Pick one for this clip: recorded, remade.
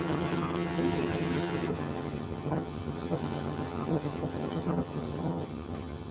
remade